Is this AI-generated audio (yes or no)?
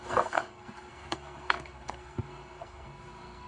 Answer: yes